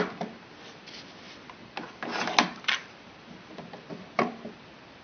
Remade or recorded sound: recorded